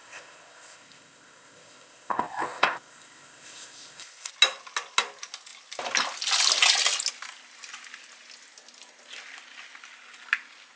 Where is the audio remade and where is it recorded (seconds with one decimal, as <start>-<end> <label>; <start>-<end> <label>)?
0.0-4.3 remade; 4.3-10.8 recorded